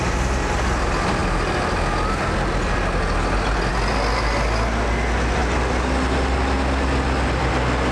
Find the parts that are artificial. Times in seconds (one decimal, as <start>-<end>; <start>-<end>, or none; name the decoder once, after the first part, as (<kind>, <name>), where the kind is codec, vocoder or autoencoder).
none